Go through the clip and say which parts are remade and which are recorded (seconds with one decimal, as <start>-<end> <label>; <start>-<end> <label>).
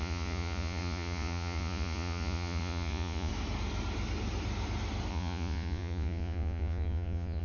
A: 0.0-3.3 remade; 3.3-5.1 recorded; 5.1-7.4 remade